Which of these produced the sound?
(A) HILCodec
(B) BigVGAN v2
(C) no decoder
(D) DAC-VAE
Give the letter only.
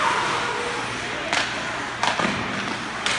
C